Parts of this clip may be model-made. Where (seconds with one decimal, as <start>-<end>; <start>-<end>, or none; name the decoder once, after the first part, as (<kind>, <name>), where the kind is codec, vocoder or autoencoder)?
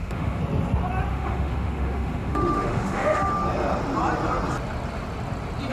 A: 0.0-0.4 (autoencoder, DAC-VAE); 1.1-3.3